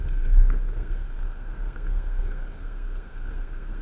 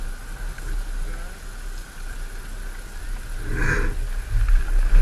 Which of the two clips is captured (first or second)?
second